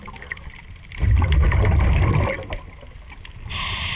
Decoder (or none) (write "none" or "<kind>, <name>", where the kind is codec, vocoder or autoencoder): none